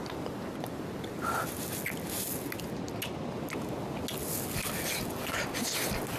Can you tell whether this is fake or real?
real